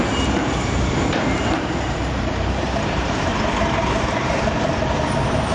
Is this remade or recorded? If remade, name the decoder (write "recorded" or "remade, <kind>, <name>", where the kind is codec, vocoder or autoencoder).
remade, vocoder, BigVGAN v2